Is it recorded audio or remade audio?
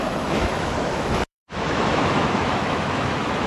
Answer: remade